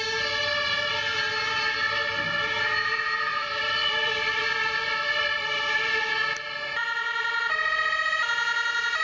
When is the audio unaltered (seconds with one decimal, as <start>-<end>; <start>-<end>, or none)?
0.0-3.3; 6.0-6.8; 7.4-9.0